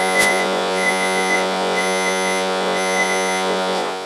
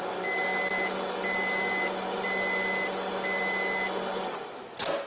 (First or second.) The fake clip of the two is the first